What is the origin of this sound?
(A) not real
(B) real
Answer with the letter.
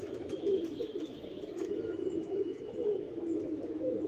A